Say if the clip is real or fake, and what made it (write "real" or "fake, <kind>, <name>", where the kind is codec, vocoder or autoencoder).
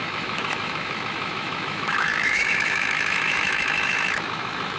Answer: fake, autoencoder, DAC-VAE